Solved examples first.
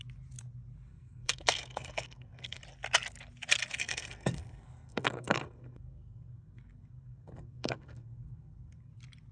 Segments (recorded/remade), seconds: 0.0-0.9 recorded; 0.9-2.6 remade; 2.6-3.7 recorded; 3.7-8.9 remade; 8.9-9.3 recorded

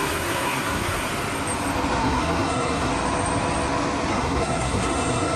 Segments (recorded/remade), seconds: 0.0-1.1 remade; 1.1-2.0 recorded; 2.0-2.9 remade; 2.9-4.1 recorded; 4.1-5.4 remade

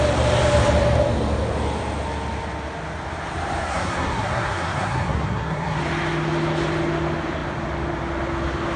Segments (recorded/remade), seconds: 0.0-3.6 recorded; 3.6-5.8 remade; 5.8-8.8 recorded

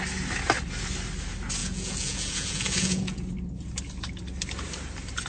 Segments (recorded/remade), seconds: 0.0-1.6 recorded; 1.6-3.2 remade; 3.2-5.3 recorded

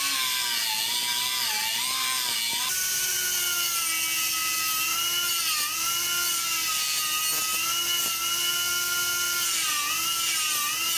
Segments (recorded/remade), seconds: 0.0-2.5 recorded; 2.5-3.1 remade; 3.1-11.0 recorded